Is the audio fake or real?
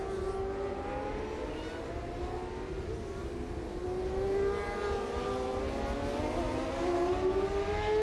real